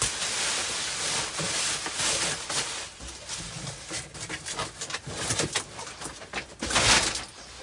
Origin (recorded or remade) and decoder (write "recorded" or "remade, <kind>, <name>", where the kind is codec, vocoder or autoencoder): recorded